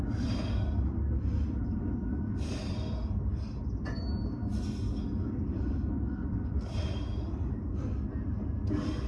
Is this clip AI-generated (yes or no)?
no